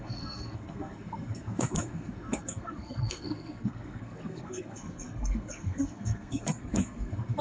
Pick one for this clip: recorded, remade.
remade